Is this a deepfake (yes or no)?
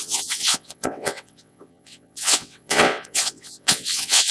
yes